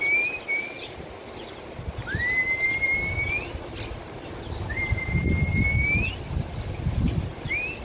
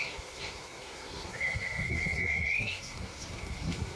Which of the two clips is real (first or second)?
first